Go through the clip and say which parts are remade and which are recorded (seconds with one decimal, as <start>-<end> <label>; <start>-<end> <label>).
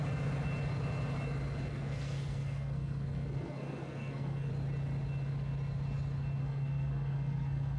0.0-1.7 recorded; 1.7-4.5 remade; 4.5-6.4 recorded; 6.4-7.8 remade